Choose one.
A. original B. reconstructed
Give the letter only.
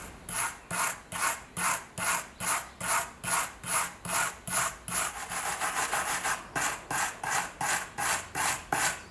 A